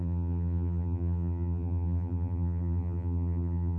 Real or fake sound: fake